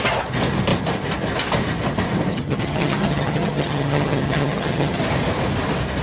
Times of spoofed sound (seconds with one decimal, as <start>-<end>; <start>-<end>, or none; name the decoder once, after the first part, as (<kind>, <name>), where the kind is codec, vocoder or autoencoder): 2.3-5.0 (vocoder, HiFi-GAN)